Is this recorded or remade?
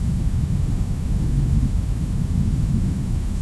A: remade